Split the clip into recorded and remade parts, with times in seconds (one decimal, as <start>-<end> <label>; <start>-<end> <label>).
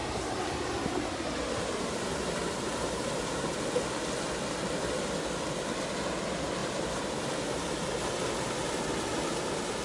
0.0-3.6 remade; 3.6-6.6 recorded; 6.6-7.2 remade; 7.2-9.8 recorded